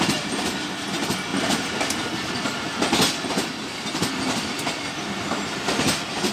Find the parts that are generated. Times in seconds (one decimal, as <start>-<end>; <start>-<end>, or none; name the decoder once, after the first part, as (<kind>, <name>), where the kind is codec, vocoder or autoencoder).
none